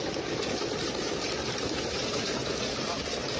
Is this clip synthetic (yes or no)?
no